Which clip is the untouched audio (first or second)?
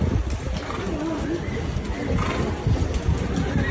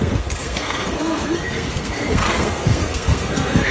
first